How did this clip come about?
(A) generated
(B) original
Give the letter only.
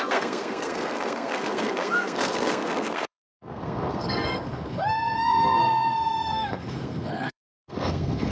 A